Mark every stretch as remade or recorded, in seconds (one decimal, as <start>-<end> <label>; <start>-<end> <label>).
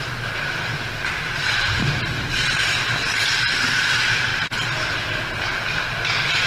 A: 0.0-6.5 recorded